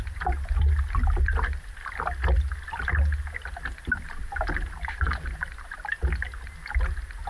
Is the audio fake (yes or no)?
no